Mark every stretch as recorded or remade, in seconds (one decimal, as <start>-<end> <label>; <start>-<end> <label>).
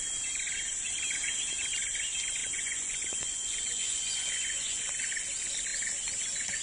0.0-2.4 recorded; 2.4-4.9 remade; 4.9-6.6 recorded